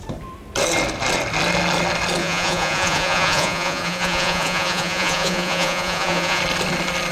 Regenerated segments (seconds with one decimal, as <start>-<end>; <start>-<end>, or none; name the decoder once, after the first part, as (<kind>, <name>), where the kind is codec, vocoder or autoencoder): 2.2-6.4 (vocoder, Vocos)